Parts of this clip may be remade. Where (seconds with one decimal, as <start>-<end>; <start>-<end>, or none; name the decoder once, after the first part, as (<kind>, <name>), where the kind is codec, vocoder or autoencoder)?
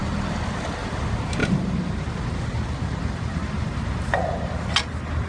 1.4-4.6 (vocoder, BigVGAN v2)